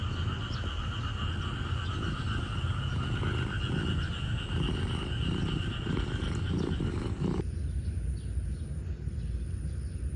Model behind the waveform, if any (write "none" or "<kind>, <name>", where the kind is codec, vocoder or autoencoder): none